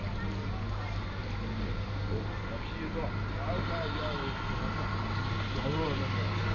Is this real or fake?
real